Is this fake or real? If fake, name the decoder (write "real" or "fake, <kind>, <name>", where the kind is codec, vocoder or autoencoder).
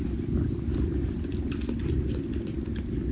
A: real